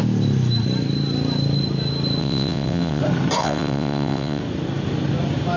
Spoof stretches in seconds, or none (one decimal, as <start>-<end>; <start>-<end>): 2.2-3.0; 3.4-4.4